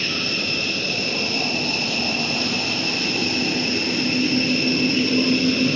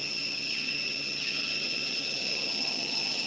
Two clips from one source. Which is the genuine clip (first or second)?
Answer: first